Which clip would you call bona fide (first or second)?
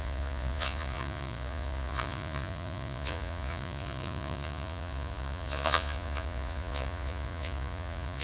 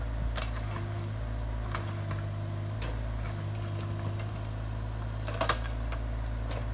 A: second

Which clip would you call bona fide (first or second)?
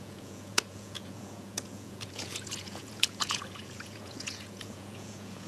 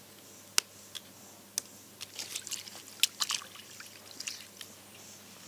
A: second